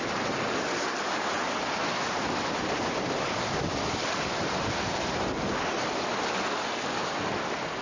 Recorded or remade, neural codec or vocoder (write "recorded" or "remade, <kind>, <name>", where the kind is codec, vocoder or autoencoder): recorded